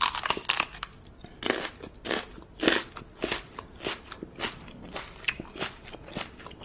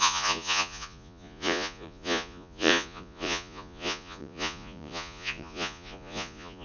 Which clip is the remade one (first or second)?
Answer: second